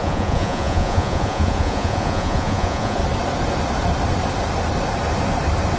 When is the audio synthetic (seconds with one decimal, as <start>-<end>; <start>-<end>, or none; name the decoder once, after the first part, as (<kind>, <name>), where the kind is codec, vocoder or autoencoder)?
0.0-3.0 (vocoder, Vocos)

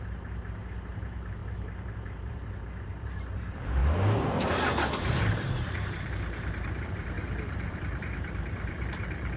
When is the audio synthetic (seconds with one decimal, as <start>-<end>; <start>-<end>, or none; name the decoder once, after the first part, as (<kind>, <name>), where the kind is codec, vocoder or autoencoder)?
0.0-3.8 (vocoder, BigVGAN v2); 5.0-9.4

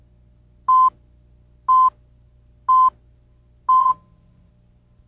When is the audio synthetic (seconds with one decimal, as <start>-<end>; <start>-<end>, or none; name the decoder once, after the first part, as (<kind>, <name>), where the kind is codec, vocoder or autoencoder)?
3.8-4.5 (vocoder, Vocos)

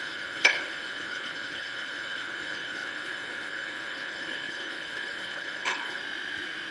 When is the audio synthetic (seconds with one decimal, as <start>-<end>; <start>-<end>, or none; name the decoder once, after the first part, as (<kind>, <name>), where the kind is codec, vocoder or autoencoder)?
0.0-6.0 (codec, HILCodec)

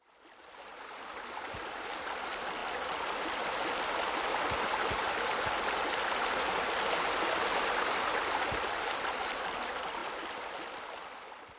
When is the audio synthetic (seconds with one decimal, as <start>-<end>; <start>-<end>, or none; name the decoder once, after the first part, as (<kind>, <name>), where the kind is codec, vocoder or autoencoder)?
none

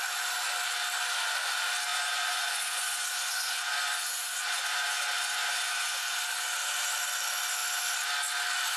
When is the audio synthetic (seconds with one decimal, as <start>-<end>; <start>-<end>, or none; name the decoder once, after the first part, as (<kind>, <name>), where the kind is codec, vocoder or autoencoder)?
1.9-6.2 (vocoder, Vocos)

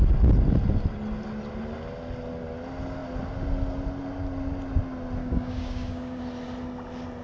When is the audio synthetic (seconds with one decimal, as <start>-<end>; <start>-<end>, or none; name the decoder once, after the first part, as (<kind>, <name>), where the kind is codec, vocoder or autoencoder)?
5.2-6.2 (codec, DAC)